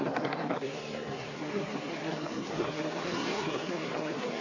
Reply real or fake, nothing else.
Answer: fake